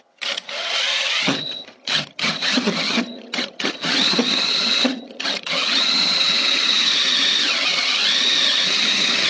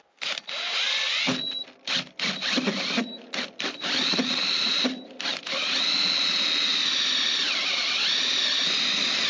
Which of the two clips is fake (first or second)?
first